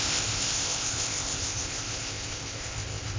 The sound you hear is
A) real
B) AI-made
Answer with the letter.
B